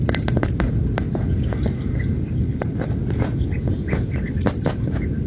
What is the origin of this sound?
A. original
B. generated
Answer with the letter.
A